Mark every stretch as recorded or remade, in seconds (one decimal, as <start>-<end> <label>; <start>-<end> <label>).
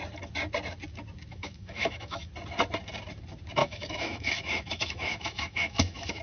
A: 0.0-1.3 recorded; 1.3-2.3 remade; 2.3-3.6 recorded; 3.6-6.2 remade